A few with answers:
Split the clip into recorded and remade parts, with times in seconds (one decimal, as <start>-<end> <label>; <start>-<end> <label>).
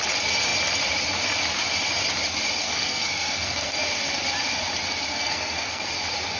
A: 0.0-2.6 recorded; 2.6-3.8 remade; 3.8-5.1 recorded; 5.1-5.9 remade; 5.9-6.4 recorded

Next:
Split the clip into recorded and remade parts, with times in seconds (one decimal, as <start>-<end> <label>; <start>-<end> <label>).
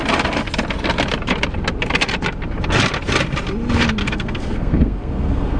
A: 0.0-4.0 recorded; 4.0-5.6 remade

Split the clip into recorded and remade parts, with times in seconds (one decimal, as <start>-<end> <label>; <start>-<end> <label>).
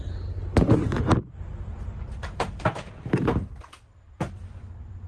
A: 0.0-1.7 recorded; 1.7-2.8 remade; 2.8-5.1 recorded